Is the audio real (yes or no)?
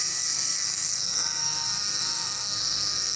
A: no